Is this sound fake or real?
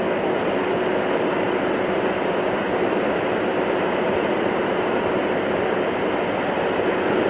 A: real